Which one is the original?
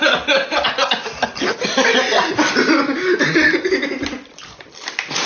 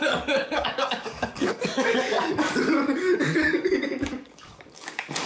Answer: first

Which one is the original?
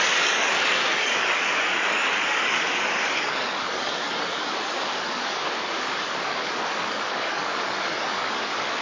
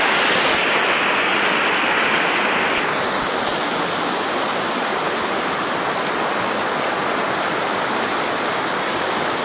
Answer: second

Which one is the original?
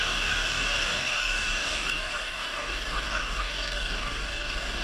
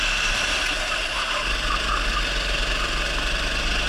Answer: second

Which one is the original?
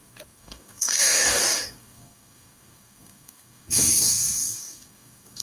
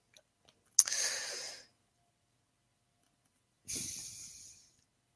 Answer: second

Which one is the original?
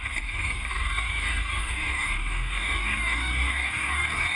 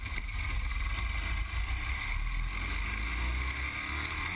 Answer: second